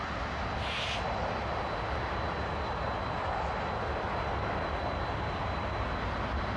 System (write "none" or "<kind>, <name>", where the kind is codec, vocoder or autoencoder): none